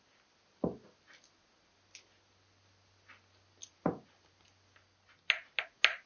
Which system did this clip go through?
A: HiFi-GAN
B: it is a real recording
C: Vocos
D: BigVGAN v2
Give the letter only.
B